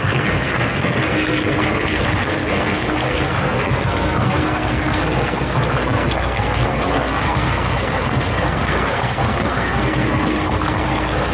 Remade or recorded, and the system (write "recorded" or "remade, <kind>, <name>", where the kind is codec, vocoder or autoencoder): remade, codec, SNAC